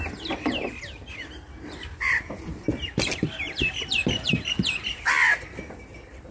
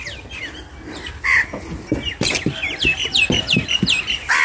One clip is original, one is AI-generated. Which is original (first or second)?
second